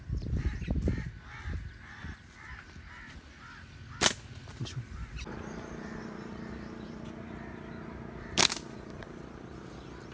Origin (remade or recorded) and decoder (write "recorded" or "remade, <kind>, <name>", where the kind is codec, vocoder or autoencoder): recorded